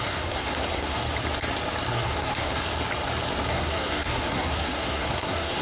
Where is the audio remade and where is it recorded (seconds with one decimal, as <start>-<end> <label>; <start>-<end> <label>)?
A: 0.0-1.0 remade; 1.0-1.9 recorded; 1.9-2.6 remade; 2.6-3.5 recorded; 3.5-5.6 remade